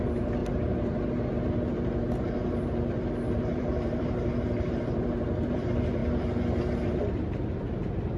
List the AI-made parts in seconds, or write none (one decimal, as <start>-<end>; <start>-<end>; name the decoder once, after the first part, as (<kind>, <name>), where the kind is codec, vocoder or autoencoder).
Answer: 0.0-6.0 (vocoder, BigVGAN v2); 7.0-8.2